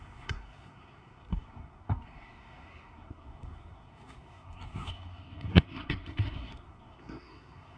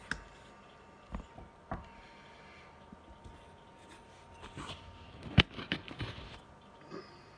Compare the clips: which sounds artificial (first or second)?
first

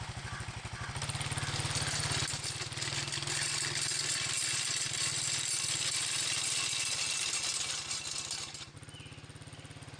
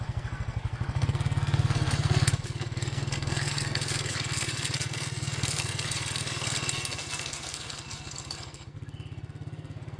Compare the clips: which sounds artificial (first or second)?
second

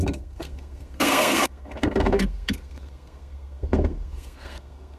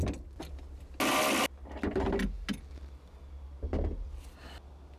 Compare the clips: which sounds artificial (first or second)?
first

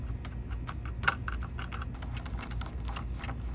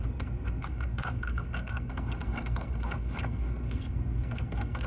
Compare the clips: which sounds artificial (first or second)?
second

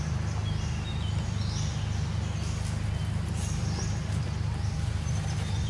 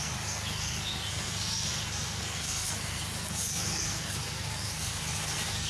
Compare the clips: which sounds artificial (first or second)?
second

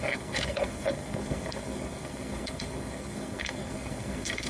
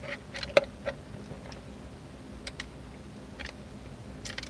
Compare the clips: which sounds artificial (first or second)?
first